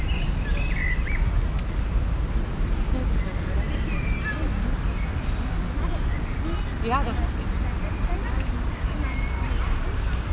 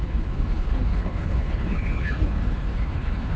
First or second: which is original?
first